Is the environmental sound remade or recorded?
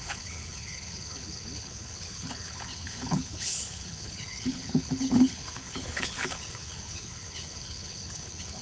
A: remade